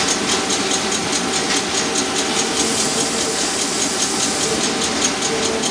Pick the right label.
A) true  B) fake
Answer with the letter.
A